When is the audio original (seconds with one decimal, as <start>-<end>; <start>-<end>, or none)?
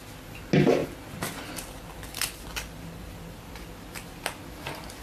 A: 0.0-0.8; 3.5-5.0